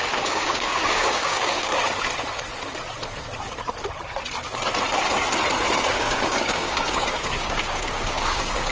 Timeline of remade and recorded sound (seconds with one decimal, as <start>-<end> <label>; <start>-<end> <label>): 0.0-1.7 remade; 1.7-5.8 recorded; 5.8-8.7 remade

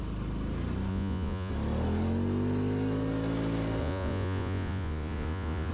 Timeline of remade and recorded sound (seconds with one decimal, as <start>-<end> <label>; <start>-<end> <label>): 0.0-0.9 recorded; 0.9-1.5 remade; 1.5-3.8 recorded; 3.8-5.7 remade

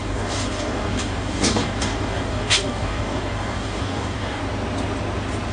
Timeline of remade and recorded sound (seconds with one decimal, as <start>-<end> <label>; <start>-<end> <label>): 0.0-4.4 remade; 4.4-5.5 recorded

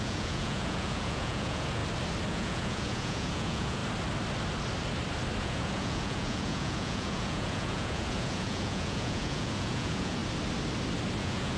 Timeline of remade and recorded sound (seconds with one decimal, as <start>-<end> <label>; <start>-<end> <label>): 0.0-1.8 remade; 1.8-2.3 recorded; 2.3-3.8 remade; 3.8-5.4 recorded; 5.4-10.2 remade; 10.2-11.2 recorded; 11.2-11.6 remade